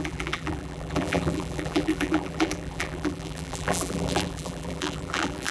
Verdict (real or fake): fake